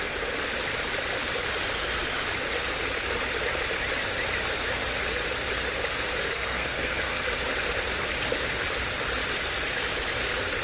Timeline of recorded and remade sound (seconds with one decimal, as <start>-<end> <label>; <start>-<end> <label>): 0.0-6.2 recorded; 6.2-7.2 remade; 7.2-10.6 recorded